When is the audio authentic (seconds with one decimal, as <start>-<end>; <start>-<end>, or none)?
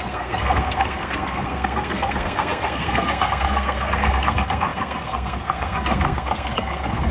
none